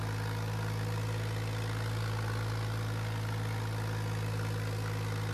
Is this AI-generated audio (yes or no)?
no